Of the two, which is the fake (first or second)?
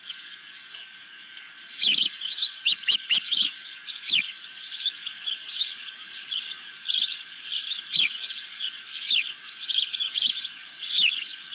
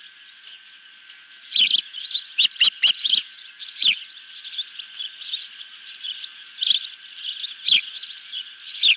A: first